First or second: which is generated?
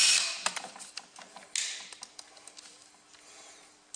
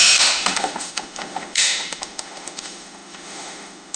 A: second